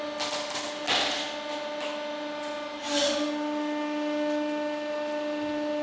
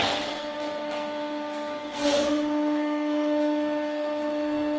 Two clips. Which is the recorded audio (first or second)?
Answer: first